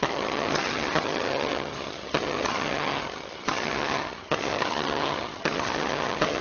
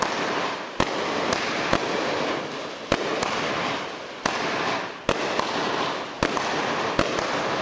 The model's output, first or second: first